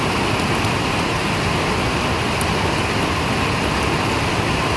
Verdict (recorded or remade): recorded